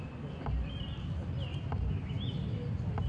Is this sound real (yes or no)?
yes